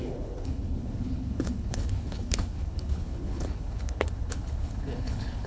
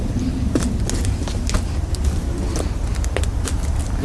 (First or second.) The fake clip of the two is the first